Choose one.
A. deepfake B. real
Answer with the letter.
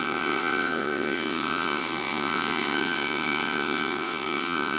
A